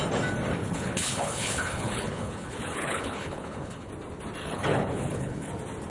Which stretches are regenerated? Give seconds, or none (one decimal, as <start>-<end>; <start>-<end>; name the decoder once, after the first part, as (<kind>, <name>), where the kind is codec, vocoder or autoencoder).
0.6-3.9 (codec, HILCodec); 4.4-5.5